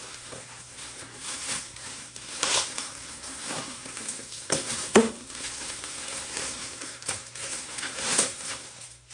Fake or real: fake